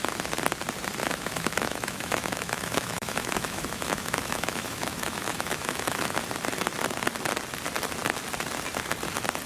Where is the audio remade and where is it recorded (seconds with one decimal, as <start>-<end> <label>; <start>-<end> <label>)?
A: 0.0-1.0 recorded; 1.0-6.2 remade; 6.2-9.5 recorded